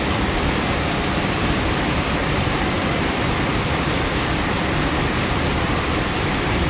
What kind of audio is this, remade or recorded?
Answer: recorded